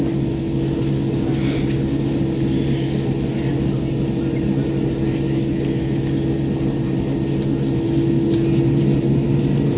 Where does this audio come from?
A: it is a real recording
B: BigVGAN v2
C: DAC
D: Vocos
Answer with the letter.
A